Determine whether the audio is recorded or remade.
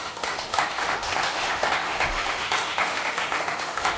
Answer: remade